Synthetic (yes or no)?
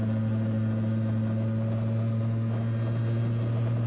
no